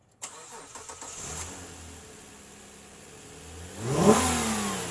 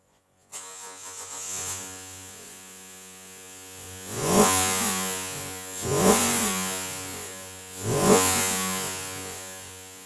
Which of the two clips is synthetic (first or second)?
second